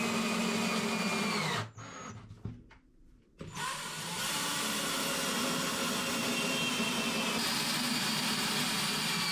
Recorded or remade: recorded